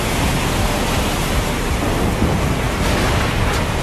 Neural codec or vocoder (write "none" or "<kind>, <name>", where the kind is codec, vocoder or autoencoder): none